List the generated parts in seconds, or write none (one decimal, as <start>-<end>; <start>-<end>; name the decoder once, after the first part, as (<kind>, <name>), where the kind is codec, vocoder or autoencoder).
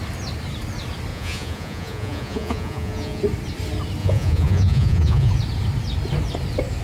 1.1-3.2 (vocoder, Vocos); 4.0-5.3